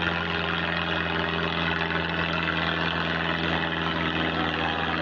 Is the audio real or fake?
real